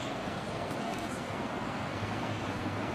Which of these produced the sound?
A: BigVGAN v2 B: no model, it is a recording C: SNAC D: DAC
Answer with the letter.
C